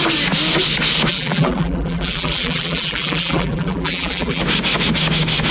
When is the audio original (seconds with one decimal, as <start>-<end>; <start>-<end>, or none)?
0.0-1.1; 4.4-5.5